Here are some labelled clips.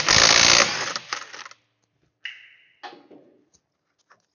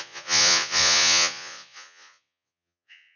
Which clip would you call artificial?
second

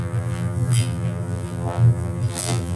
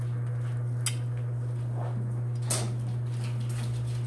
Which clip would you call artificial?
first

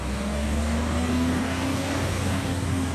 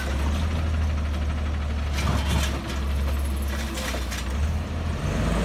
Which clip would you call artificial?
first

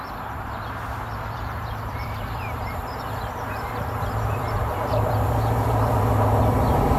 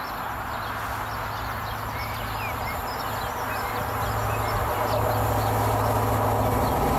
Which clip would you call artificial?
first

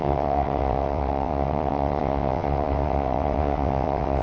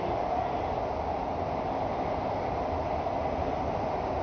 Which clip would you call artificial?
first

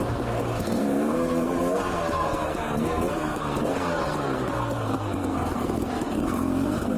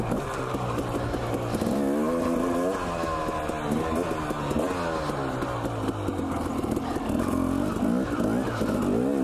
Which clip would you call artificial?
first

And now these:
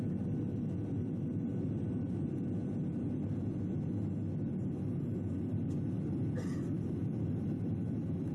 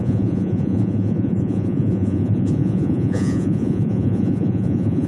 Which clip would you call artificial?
second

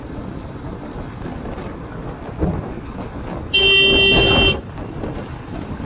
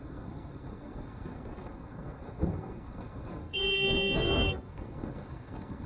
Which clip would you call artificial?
second